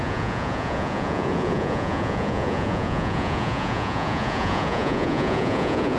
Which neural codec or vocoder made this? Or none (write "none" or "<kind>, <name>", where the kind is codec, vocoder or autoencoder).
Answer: vocoder, Vocos